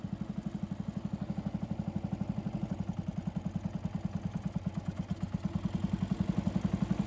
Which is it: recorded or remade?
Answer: recorded